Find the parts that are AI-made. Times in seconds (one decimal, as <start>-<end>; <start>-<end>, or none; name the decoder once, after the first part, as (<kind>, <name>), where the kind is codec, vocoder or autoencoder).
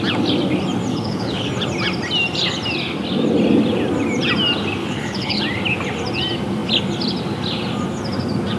0.9-1.5 (codec, HILCodec); 4.8-5.4